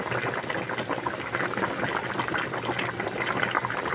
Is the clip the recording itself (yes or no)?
yes